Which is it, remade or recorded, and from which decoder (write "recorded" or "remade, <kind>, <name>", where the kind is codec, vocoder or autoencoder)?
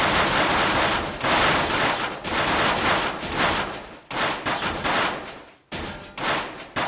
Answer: recorded